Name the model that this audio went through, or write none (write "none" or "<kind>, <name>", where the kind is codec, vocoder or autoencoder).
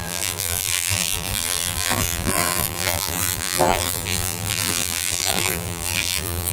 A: vocoder, BigVGAN v2